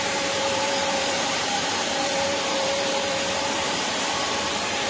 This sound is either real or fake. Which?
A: fake